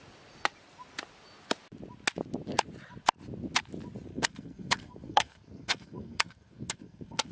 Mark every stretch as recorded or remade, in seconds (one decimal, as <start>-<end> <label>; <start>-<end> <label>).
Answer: 0.0-4.1 recorded; 4.1-7.3 remade